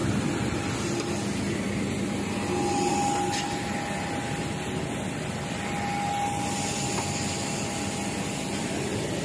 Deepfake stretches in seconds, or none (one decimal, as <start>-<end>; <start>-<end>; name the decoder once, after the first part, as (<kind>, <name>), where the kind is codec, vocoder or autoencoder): none